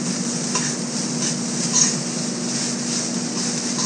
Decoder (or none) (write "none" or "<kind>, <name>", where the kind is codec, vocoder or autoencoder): none